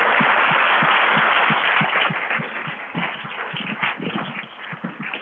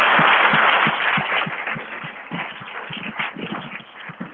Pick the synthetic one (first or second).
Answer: second